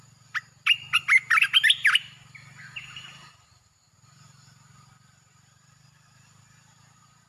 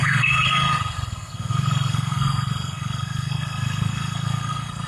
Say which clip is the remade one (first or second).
second